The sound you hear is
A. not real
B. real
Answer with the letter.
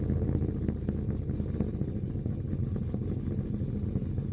B